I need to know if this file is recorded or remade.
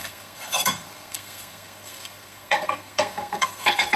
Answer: remade